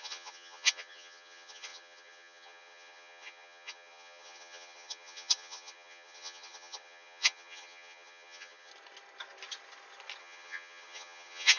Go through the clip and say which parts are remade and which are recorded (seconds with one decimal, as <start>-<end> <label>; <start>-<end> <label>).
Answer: 0.0-8.7 remade; 8.7-10.2 recorded; 10.2-11.6 remade